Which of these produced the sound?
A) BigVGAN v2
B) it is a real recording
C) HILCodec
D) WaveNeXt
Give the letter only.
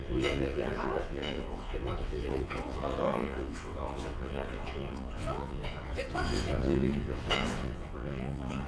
D